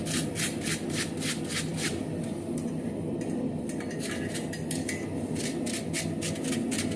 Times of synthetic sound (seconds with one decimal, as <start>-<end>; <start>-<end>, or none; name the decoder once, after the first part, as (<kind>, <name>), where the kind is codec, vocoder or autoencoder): 0.0-1.1 (vocoder, BigVGAN v2); 1.7-5.9